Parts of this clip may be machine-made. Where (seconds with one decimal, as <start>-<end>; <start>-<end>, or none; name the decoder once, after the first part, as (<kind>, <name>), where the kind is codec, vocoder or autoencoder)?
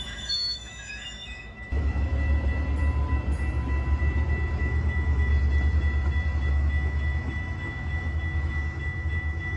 0.0-2.1 (autoencoder, DAC-VAE); 4.6-5.3; 6.5-9.6